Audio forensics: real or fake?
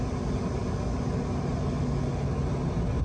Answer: real